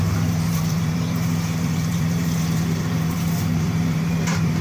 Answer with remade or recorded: remade